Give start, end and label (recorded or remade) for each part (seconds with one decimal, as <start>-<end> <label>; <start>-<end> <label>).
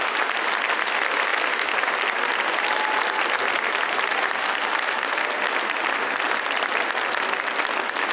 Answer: 0.0-8.1 recorded